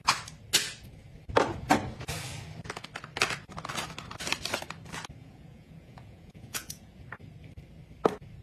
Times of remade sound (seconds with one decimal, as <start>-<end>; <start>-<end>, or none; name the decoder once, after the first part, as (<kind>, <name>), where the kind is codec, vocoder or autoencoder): 5.2-6.9 (vocoder, Vocos)